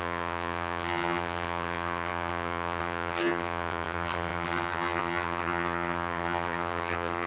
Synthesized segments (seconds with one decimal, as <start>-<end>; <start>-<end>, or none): 0.0-7.3